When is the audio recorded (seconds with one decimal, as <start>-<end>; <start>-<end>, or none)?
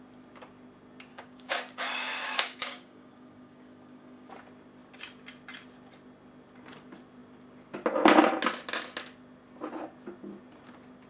0.0-1.1; 4.3-11.1